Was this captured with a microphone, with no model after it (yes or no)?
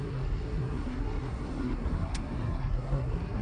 no